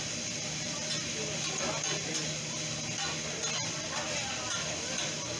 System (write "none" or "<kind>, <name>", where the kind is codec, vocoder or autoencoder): none